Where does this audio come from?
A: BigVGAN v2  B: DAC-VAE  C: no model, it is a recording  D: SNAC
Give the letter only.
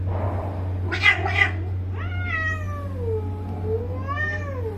C